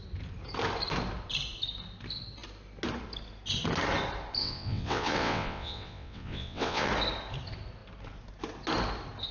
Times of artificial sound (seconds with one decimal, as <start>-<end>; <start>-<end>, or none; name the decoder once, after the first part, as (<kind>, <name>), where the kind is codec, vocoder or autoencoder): 4.4-6.9 (vocoder, WaveNeXt)